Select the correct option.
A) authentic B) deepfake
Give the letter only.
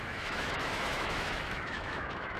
B